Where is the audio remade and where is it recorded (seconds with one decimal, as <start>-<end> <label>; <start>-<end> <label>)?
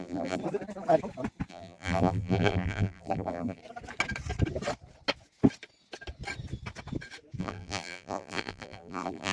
0.0-0.4 remade; 0.4-1.5 recorded; 1.5-3.6 remade; 3.6-7.4 recorded; 7.4-9.3 remade